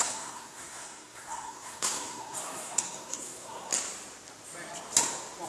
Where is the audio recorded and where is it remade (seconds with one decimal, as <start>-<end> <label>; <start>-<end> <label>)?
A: 0.0-3.7 remade; 3.7-5.5 recorded